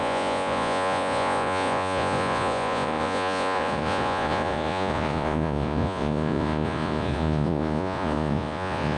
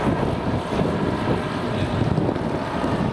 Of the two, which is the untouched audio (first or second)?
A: second